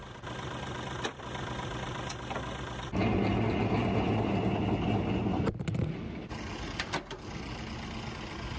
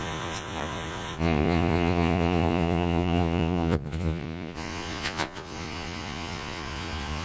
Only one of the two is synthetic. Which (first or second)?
second